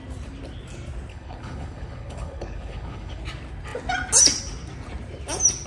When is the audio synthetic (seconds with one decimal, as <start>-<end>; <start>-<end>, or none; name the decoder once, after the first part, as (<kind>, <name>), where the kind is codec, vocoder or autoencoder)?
1.1-3.2 (codec, HILCodec)